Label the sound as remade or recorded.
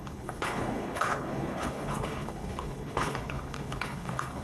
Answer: remade